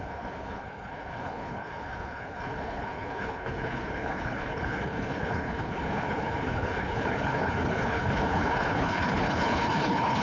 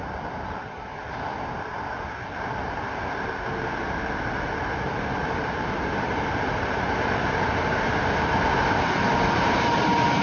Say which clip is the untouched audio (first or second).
second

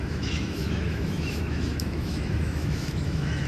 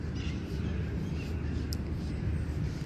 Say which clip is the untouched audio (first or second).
second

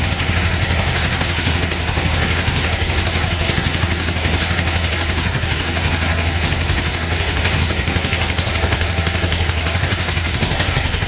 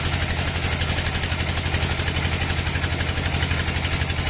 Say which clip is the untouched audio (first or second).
second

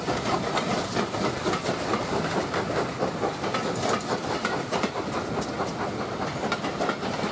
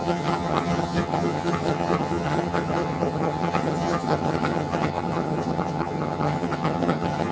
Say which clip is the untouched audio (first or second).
first